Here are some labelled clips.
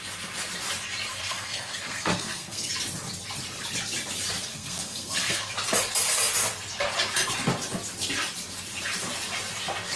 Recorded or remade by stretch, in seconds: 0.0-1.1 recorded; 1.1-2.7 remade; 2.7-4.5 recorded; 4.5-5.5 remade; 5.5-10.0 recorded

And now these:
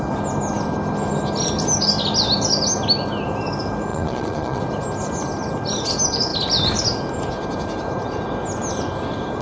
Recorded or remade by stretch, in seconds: 0.0-3.9 recorded; 3.9-4.6 remade; 4.6-9.4 recorded

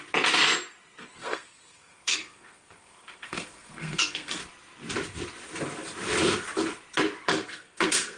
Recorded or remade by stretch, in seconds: 0.0-1.2 recorded; 1.2-4.4 remade; 4.4-7.3 recorded; 7.3-8.2 remade

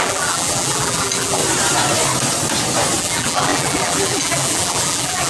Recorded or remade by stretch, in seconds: 0.0-1.4 remade; 1.4-3.0 recorded; 3.0-5.3 remade

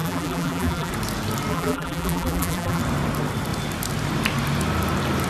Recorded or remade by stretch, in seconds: 0.0-0.9 remade; 0.9-1.5 recorded; 1.5-2.8 remade; 2.8-5.3 recorded